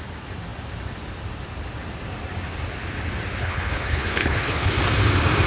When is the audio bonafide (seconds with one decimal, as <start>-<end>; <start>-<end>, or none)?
0.0-3.4; 4.7-5.5